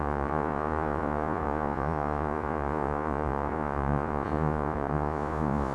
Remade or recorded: remade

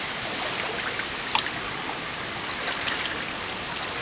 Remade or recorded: recorded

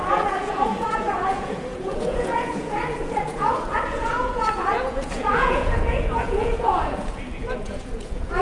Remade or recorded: remade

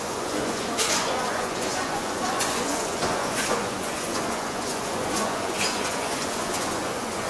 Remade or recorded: remade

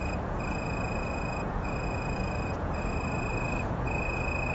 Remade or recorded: remade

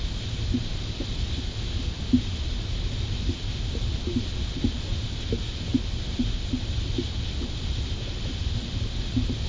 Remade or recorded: recorded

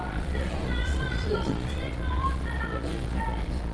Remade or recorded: remade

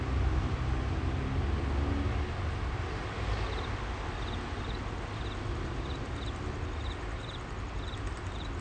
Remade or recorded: recorded